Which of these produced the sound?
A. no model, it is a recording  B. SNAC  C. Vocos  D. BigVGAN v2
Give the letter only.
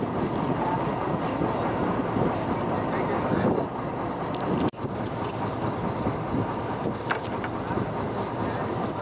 D